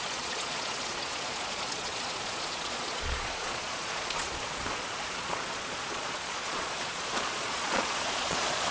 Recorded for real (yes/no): no